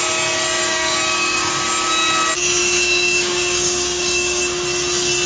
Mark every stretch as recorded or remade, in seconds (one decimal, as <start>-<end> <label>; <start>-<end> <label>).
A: 0.0-0.6 recorded; 0.6-1.5 remade; 1.5-2.6 recorded; 2.6-4.4 remade; 4.4-5.3 recorded